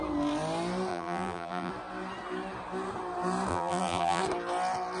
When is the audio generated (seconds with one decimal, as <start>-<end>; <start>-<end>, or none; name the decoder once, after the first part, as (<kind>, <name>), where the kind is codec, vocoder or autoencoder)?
0.9-1.7 (vocoder, BigVGAN v2); 3.5-4.2